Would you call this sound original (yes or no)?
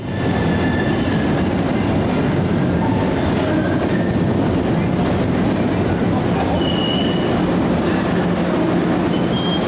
yes